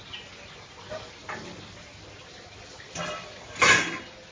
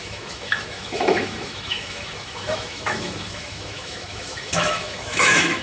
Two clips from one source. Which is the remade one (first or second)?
second